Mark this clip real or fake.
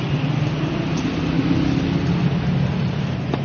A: real